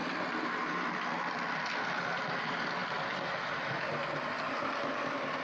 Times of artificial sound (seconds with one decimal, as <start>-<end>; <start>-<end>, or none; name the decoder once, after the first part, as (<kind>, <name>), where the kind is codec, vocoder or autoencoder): none